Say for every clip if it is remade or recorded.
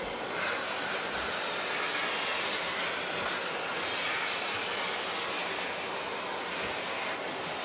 recorded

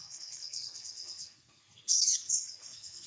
remade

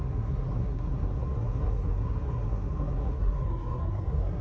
remade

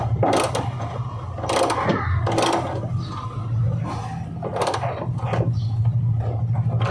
recorded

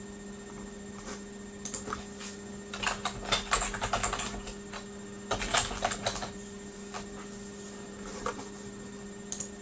recorded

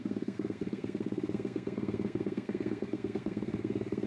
remade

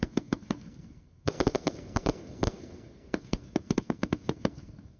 remade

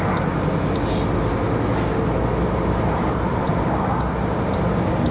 recorded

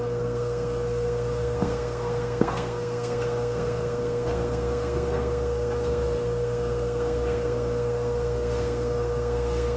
remade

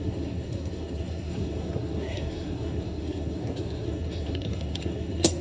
remade